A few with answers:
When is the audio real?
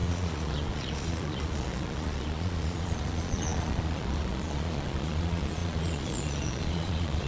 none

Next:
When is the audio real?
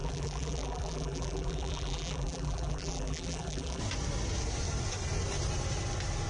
3.8-6.3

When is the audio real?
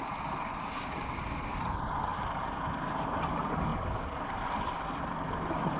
0.0-2.1; 3.3-5.8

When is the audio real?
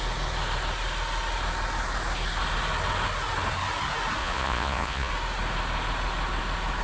0.0-4.2; 5.1-6.8